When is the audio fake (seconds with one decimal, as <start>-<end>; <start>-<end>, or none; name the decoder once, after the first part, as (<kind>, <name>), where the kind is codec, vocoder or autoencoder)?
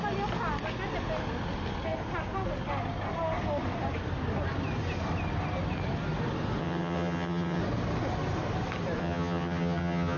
6.6-7.6 (vocoder, HiFi-GAN); 9.0-10.2